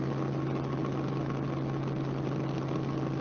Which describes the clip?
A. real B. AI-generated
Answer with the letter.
A